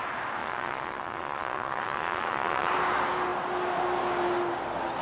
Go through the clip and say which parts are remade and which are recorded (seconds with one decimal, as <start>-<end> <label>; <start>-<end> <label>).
0.0-0.4 recorded; 0.4-2.7 remade; 2.7-5.0 recorded